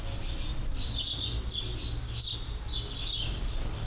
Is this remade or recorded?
recorded